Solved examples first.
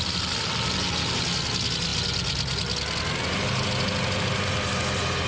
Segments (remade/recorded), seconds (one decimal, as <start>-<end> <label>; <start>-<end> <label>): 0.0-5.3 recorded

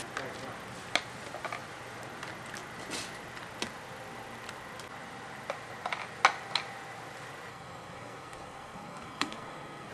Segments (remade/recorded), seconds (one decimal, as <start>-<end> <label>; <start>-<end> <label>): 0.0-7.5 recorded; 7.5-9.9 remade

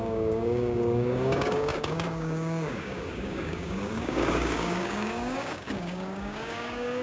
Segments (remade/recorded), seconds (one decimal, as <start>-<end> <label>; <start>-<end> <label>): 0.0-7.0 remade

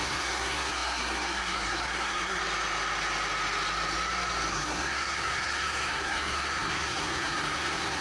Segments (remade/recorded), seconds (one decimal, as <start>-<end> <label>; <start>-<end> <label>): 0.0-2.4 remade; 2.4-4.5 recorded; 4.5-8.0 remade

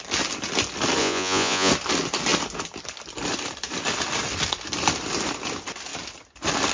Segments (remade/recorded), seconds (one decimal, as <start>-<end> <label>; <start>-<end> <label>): 0.0-1.0 recorded; 1.0-1.7 remade; 1.7-6.7 recorded

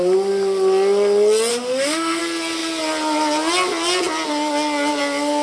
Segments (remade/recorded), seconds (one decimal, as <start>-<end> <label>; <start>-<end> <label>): 0.0-1.5 recorded; 1.5-2.2 remade; 2.2-5.4 recorded